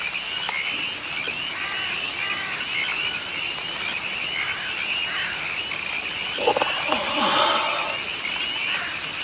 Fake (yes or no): no